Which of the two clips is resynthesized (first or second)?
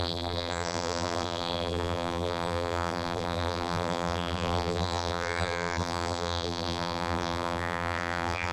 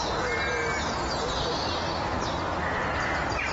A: first